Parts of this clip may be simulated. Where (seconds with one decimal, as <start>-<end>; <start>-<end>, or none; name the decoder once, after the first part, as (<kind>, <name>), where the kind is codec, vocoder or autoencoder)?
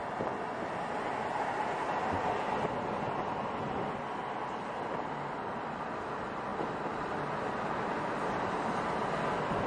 none